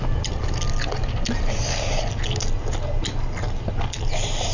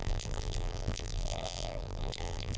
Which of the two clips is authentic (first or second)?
first